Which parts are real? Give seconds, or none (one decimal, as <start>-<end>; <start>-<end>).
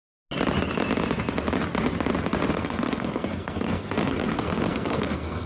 0.0-2.5